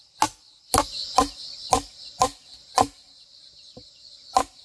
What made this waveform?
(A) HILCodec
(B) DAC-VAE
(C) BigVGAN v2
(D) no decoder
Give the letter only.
D